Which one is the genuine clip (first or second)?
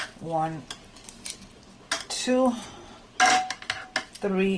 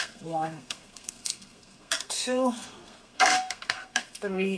first